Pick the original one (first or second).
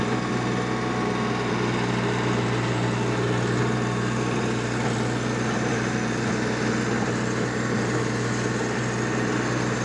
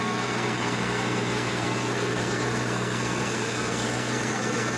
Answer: first